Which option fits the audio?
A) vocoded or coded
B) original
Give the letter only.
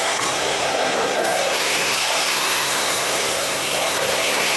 A